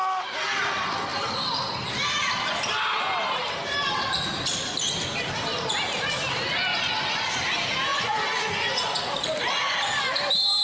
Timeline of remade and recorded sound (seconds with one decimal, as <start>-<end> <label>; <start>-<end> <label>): 0.0-6.7 recorded; 6.7-7.3 remade; 7.3-7.9 recorded; 7.9-9.1 remade; 9.1-10.6 recorded